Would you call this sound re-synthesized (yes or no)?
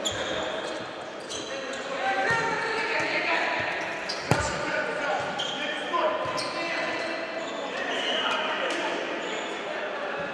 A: no